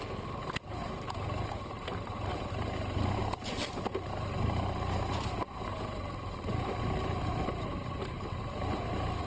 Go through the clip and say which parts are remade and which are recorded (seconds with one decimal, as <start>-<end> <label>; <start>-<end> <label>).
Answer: 0.0-9.3 recorded